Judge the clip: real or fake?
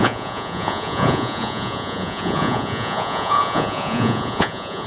fake